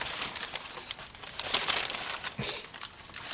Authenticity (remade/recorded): recorded